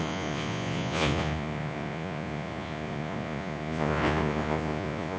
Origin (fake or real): fake